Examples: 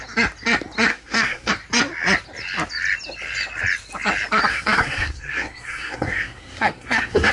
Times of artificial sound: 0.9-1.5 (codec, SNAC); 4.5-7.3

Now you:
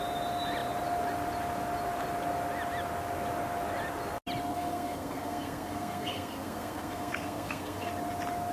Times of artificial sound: 4.5-7.9 (codec, SNAC)

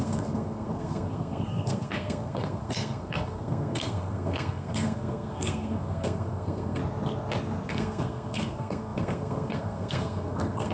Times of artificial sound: 0.0-6.8 (codec, SNAC); 7.7-10.7

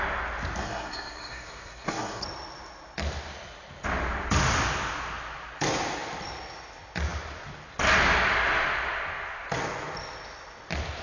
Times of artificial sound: 0.6-2.2 (codec, SNAC)

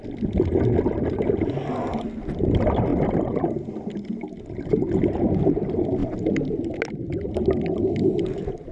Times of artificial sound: none

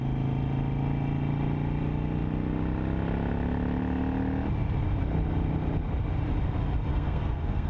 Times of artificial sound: 6.9-7.7 (codec, SNAC)

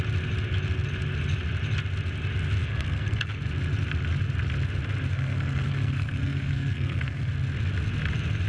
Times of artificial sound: 2.6-3.4 (codec, SNAC); 5.1-7.3

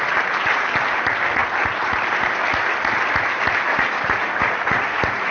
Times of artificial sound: none